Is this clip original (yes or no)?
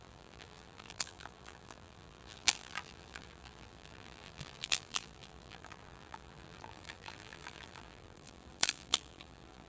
no